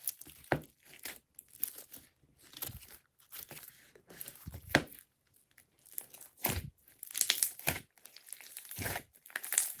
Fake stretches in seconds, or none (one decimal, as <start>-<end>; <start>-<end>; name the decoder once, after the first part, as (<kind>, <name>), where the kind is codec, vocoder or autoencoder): 3.9-4.9 (vocoder, BigVGAN v2); 8.5-9.8